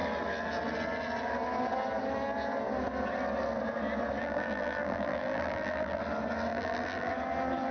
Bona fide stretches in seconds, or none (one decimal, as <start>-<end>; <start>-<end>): 0.0-4.2; 6.0-6.5; 7.1-7.7